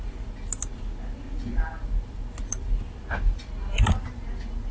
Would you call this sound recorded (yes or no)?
yes